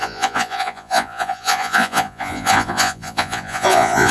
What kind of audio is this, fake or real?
fake